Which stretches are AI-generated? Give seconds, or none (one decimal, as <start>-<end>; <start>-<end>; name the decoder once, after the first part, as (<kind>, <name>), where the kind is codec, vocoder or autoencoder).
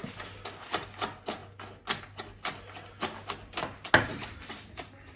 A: none